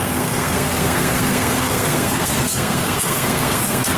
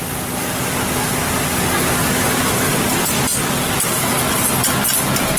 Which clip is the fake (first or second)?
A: first